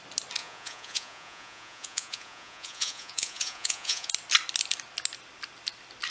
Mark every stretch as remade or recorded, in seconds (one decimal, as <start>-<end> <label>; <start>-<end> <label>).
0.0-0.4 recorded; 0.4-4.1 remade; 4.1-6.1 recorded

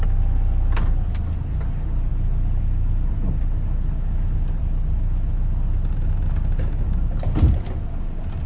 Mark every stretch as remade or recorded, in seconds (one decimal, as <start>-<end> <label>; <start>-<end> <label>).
0.0-8.5 recorded

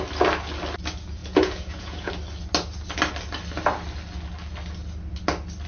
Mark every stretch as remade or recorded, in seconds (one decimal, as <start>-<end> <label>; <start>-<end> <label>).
0.0-1.2 recorded; 1.2-2.1 remade; 2.1-5.7 recorded